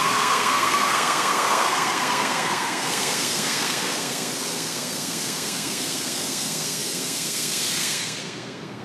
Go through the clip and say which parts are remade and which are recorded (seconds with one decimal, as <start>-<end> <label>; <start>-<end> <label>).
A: 0.0-8.8 remade